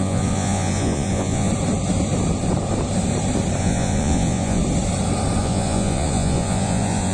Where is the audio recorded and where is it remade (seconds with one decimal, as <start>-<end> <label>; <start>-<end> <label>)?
0.0-1.5 remade; 1.5-3.6 recorded; 3.6-4.6 remade; 4.6-5.4 recorded; 5.4-7.1 remade